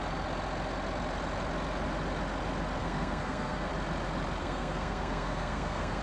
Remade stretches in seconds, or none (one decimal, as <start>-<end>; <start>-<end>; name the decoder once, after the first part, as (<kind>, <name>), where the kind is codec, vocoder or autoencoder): 2.8-3.7 (codec, SNAC); 4.4-6.0